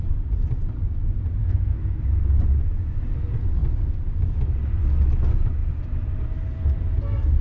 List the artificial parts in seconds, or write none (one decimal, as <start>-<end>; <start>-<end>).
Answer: 1.4-2.0